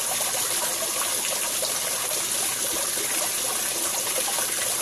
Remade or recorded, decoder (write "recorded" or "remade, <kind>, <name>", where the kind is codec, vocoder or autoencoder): recorded